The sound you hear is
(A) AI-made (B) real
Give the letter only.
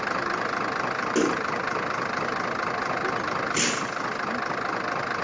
B